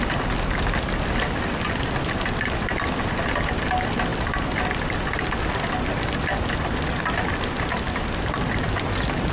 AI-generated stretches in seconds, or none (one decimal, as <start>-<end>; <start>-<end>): none